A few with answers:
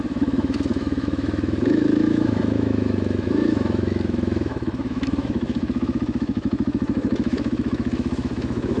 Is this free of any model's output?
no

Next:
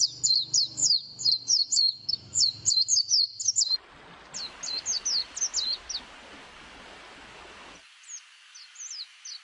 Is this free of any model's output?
yes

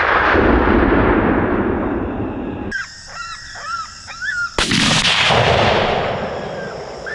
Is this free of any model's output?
yes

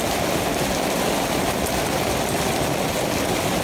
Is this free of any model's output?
yes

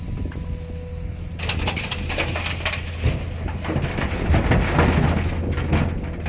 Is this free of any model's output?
yes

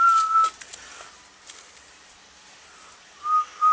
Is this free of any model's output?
yes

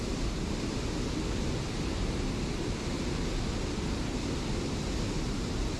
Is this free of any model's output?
yes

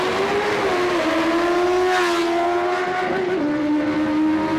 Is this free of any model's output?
yes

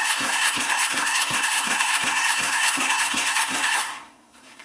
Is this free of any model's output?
no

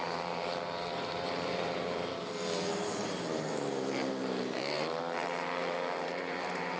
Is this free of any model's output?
no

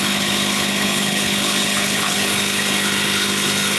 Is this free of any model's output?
no